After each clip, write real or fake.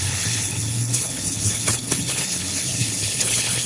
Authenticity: fake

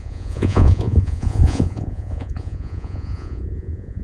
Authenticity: fake